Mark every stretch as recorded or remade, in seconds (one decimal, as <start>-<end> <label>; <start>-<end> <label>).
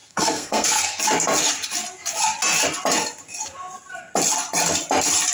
0.0-1.0 remade; 1.0-5.3 recorded